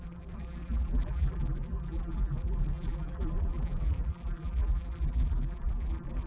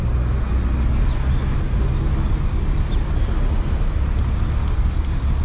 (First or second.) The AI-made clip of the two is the first